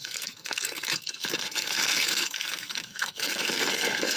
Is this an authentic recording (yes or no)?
no